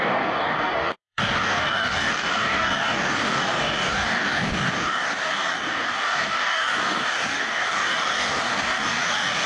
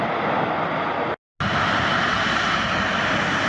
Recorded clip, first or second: second